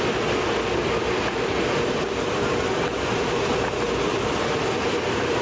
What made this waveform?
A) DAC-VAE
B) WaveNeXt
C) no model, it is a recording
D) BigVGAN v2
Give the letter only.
C